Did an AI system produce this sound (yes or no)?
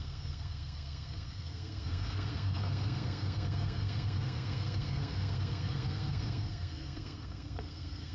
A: yes